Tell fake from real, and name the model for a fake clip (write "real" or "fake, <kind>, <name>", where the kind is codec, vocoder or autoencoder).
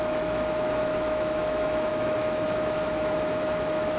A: fake, autoencoder, DAC-VAE